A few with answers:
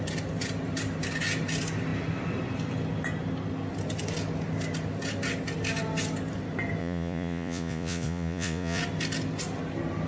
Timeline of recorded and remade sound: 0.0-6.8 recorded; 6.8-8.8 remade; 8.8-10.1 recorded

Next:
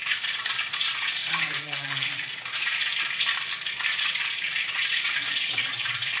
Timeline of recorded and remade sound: 0.0-2.8 remade; 2.8-3.9 recorded; 3.9-6.2 remade

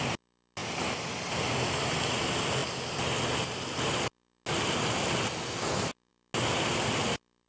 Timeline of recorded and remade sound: 0.0-7.5 recorded

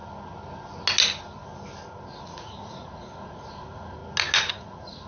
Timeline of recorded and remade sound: 0.0-2.2 recorded; 2.2-4.0 remade; 4.0-4.5 recorded; 4.5-5.1 remade